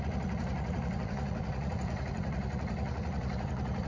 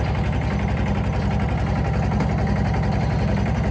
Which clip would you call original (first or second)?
second